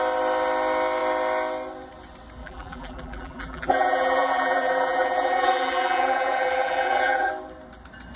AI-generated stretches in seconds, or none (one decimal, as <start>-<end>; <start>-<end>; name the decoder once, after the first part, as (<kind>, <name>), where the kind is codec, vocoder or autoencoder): 2.4-7.3 (vocoder, BigVGAN v2)